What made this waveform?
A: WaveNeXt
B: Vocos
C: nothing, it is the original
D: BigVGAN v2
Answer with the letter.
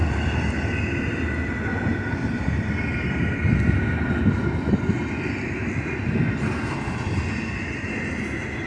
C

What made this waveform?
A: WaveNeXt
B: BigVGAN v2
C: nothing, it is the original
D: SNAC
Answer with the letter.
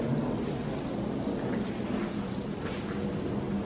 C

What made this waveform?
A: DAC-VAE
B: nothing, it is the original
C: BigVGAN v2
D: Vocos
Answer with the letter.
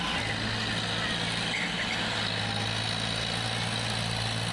B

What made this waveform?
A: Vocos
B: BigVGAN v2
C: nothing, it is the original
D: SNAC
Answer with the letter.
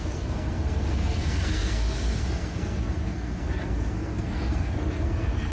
D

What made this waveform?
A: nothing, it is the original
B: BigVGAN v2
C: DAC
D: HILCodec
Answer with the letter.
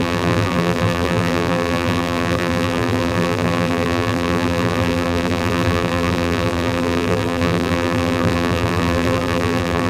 B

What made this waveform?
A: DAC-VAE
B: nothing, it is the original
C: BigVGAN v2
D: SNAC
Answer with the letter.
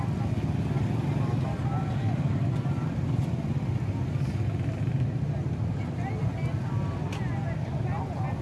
B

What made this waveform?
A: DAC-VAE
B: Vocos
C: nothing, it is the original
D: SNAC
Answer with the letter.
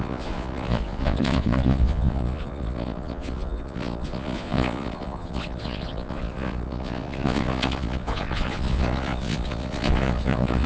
B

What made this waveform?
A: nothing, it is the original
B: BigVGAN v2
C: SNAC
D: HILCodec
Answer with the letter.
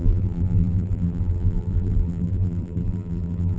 B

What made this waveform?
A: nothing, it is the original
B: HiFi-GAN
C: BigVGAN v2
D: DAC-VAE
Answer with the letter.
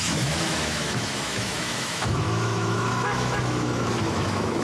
D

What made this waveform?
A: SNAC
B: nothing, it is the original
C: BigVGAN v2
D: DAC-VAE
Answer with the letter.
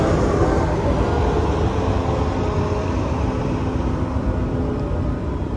B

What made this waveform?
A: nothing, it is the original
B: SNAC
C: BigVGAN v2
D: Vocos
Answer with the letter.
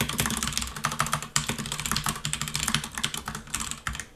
A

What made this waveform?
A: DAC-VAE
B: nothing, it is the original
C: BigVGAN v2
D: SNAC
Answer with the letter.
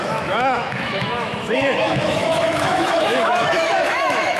A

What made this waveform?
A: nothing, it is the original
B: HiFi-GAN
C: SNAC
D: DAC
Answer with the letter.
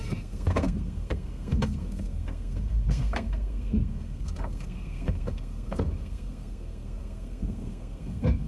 C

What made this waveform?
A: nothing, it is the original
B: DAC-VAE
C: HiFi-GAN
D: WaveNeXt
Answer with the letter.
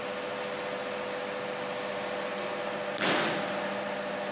A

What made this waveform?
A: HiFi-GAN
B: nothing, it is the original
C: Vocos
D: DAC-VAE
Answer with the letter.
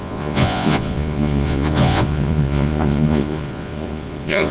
C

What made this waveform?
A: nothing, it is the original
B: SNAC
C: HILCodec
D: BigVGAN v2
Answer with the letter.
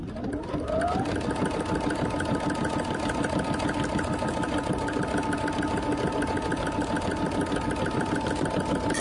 A